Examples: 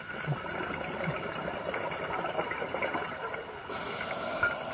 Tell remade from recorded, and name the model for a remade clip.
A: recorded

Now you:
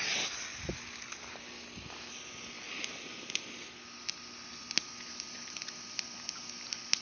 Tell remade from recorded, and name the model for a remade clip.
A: recorded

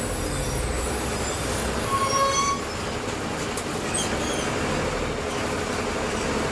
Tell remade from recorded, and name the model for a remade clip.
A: recorded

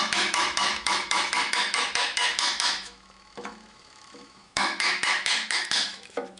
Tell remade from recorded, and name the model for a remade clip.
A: remade, autoencoder, DAC-VAE